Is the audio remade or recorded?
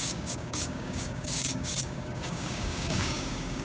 remade